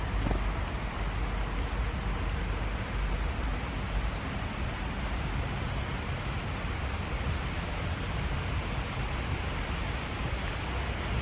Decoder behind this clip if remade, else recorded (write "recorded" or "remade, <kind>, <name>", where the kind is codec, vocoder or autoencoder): recorded